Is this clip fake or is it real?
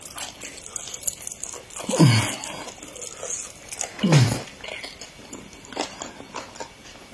real